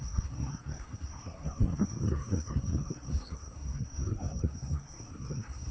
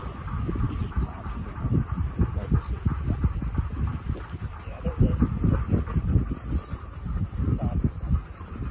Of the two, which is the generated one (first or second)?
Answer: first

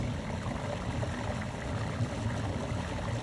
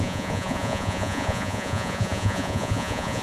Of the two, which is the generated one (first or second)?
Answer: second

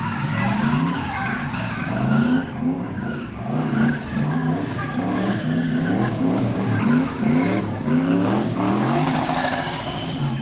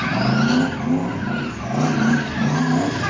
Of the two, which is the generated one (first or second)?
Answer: first